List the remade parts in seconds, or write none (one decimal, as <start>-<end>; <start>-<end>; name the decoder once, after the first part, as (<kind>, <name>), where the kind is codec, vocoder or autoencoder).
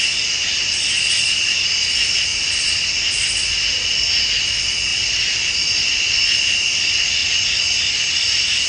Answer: 2.3-3.1 (vocoder, BigVGAN v2); 4.9-5.5; 7.2-7.8